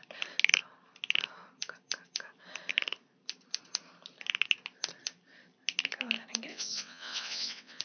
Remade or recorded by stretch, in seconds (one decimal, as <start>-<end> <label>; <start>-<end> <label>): 0.0-6.5 recorded; 6.5-7.8 remade